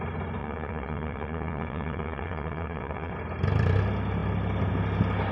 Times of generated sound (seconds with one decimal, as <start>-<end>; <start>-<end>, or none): 0.4-3.1